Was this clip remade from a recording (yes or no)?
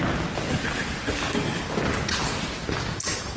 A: no